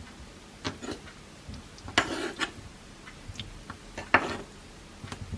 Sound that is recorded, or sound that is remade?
recorded